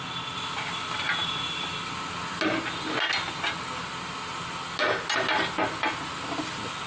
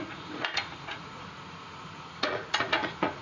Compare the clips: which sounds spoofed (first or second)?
second